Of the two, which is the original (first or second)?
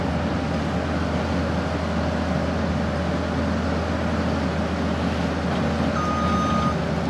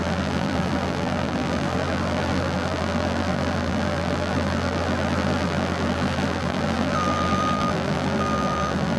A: first